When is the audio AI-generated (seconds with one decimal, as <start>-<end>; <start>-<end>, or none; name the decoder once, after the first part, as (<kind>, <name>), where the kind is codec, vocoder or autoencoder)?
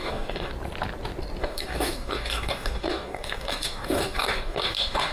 0.0-0.5 (codec, DAC); 1.4-5.1